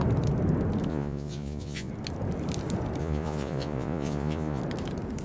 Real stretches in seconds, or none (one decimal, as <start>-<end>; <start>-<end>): 0.0-0.9; 1.9-3.0; 4.6-5.2

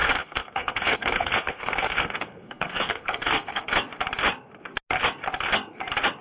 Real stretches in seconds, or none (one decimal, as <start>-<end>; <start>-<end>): 3.7-6.2

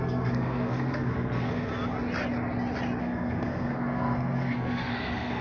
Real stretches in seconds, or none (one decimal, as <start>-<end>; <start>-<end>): 1.7-3.0

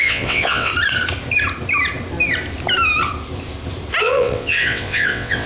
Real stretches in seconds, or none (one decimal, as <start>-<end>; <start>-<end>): 0.7-4.0

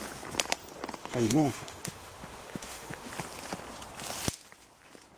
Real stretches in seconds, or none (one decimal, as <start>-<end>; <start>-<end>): 0.0-1.0; 3.1-5.2